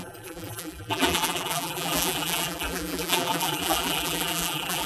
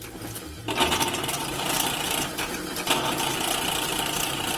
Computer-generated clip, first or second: first